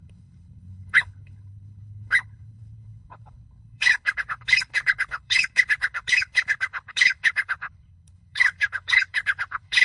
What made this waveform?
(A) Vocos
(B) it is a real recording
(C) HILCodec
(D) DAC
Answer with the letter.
C